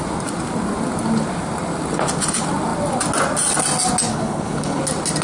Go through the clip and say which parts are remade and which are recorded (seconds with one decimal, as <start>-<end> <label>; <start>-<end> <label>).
0.0-4.1 recorded; 4.1-4.8 remade; 4.8-5.2 recorded